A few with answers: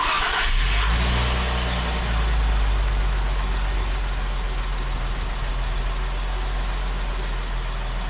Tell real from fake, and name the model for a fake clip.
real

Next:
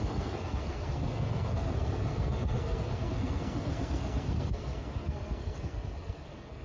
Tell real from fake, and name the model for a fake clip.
fake, codec, SNAC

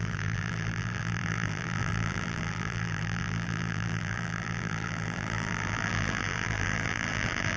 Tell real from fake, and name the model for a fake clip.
fake, vocoder, BigVGAN v2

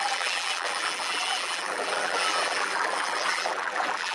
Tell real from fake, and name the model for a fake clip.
fake, vocoder, BigVGAN v2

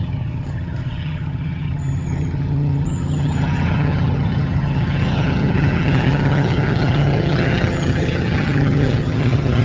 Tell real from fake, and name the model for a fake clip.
fake, vocoder, HiFi-GAN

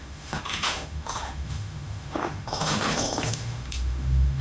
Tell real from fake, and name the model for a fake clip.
fake, autoencoder, DAC-VAE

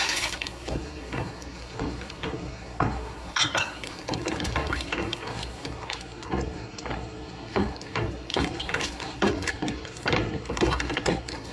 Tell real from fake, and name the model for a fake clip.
fake, codec, SNAC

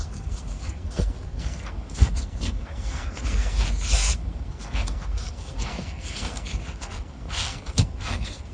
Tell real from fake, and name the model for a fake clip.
fake, codec, SNAC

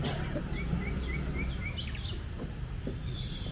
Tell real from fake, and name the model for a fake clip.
real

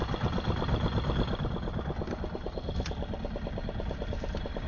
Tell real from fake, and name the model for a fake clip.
real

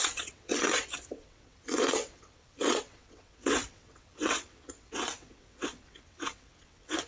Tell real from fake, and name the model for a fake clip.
fake, vocoder, WaveNeXt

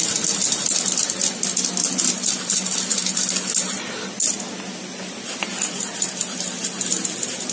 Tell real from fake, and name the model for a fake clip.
real